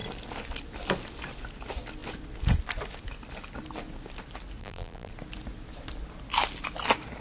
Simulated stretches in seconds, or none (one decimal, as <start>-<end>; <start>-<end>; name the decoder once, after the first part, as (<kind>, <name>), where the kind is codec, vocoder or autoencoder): 4.6-5.1 (vocoder, BigVGAN v2)